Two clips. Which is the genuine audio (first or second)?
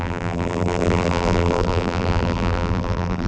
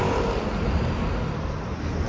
second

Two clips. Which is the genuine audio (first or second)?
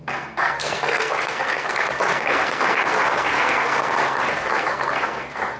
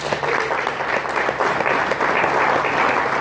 second